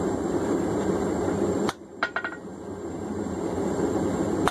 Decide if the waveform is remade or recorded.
remade